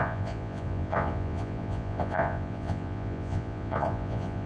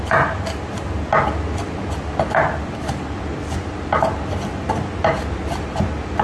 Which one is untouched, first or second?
second